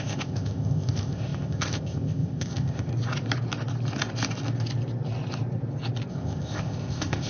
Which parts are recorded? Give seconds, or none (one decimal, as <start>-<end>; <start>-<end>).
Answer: 2.9-6.1